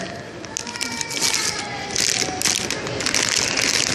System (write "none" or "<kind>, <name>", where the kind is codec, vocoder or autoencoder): none